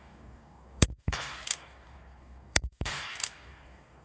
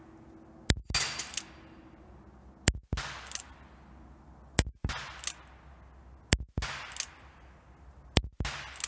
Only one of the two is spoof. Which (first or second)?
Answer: first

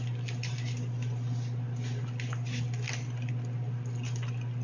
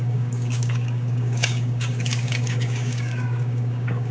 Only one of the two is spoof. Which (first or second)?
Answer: second